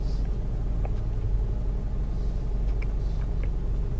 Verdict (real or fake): real